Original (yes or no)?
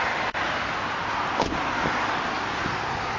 yes